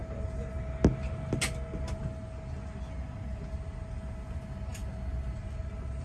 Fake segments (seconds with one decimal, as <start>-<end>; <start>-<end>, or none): none

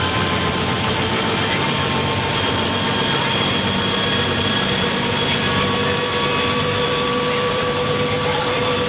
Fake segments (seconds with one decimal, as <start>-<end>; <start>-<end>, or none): 0.0-6.3; 7.5-8.9

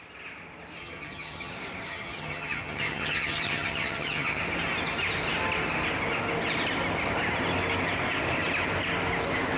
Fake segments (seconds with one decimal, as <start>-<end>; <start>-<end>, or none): 0.8-1.5; 1.9-4.4

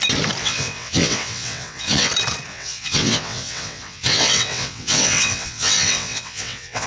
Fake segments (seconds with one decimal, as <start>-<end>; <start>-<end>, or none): 0.4-2.1; 2.5-6.9

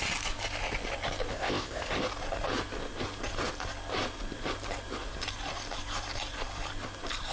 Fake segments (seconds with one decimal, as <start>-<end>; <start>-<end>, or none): 1.3-1.9

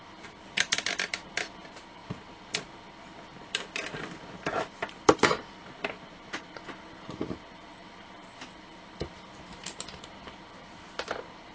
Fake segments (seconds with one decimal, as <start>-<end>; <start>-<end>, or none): 0.0-2.0; 3.4-11.5

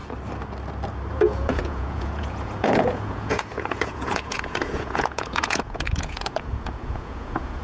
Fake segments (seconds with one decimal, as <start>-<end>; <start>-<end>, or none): 1.1-7.6

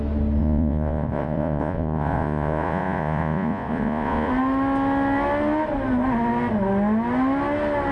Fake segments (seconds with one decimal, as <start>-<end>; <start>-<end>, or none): 0.4-4.3